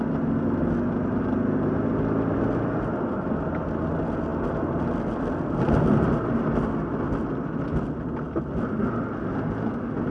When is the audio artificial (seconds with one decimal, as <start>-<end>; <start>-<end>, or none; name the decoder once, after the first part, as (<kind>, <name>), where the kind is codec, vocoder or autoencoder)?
none